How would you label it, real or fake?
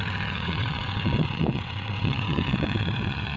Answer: fake